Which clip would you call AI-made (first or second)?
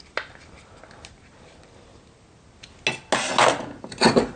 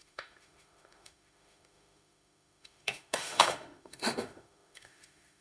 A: second